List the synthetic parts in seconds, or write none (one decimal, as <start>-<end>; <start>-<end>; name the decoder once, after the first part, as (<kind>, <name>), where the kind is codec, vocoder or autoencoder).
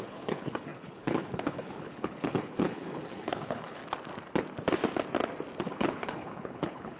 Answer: 0.0-3.8 (codec, HILCodec); 5.6-7.0